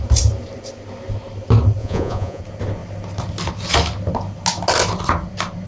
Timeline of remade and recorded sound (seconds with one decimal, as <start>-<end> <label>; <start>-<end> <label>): 0.0-1.8 recorded; 1.8-2.4 remade; 2.4-5.7 recorded